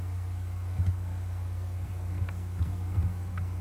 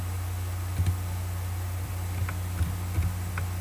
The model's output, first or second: first